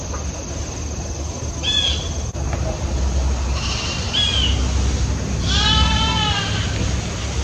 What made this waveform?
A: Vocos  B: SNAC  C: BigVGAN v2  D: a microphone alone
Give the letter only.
D